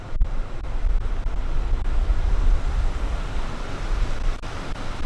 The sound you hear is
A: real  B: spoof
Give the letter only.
A